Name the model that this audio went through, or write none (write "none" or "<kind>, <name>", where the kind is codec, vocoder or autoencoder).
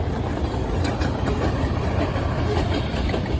none